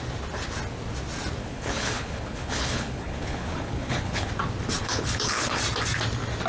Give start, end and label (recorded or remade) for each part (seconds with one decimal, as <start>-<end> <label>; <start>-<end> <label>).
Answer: 0.0-1.4 recorded; 1.4-4.3 remade; 4.3-4.8 recorded; 4.8-5.6 remade; 5.6-6.5 recorded